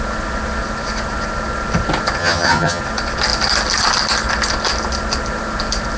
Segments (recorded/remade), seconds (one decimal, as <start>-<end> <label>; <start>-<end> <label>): 0.0-2.2 recorded; 2.2-2.8 remade; 2.8-6.0 recorded